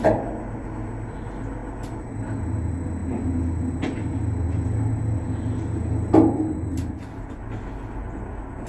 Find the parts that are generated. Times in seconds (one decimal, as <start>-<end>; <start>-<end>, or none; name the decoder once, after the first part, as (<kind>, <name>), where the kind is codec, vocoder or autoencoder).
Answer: none